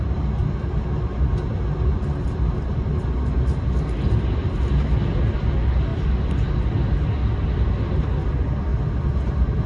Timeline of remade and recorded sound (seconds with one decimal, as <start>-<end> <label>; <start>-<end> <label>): 0.0-9.7 recorded